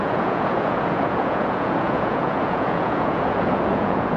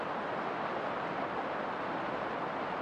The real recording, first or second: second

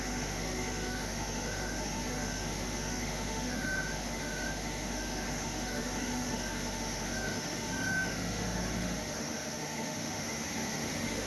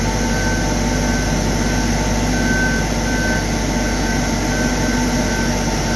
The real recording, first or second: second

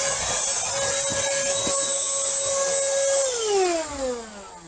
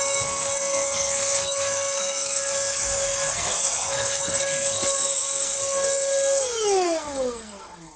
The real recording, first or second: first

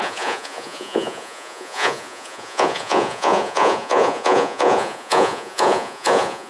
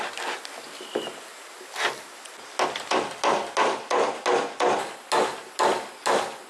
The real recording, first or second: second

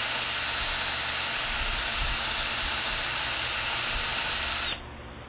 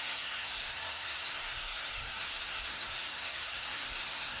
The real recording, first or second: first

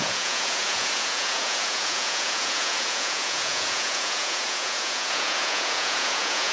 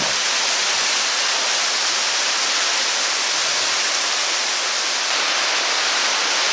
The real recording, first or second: second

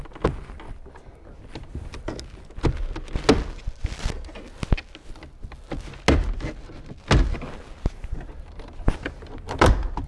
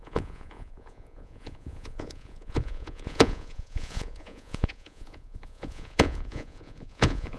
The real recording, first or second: first